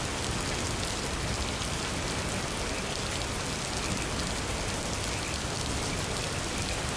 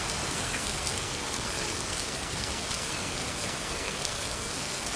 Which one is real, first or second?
first